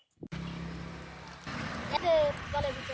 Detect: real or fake real